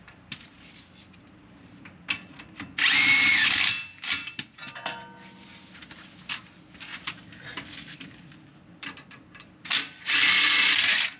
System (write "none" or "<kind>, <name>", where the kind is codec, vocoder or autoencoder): none